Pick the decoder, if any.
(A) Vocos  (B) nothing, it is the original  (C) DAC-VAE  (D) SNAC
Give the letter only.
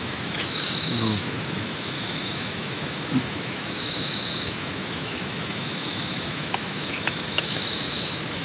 C